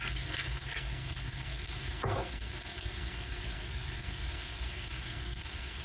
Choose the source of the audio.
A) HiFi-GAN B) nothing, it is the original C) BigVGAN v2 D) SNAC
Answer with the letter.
D